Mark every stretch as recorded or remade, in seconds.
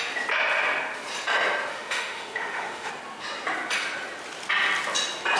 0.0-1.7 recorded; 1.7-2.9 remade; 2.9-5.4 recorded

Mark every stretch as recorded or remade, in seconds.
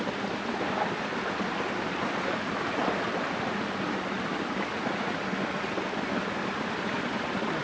0.0-4.7 recorded; 4.7-5.2 remade; 5.2-7.6 recorded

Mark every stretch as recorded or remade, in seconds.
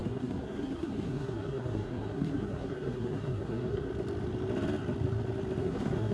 0.0-3.9 remade; 3.9-5.6 recorded; 5.6-6.1 remade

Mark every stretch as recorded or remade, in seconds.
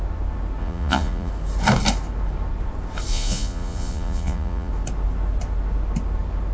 0.0-0.6 recorded; 0.6-1.3 remade; 1.3-3.1 recorded; 3.1-4.7 remade; 4.7-6.5 recorded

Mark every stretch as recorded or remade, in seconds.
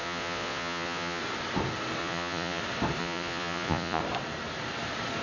0.0-1.2 remade; 1.2-2.0 recorded; 2.0-2.6 remade; 2.6-3.0 recorded; 3.0-4.0 remade; 4.0-5.2 recorded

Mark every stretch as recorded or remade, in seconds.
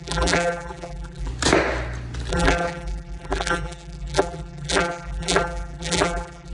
0.0-1.3 remade; 1.3-2.3 recorded; 2.3-6.5 remade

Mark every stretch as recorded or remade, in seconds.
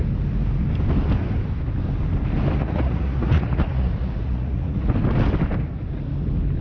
0.0-2.6 recorded; 2.6-4.9 remade; 4.9-6.6 recorded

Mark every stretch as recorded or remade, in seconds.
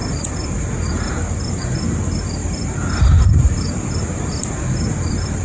0.0-1.6 remade; 1.6-2.4 recorded; 2.4-5.4 remade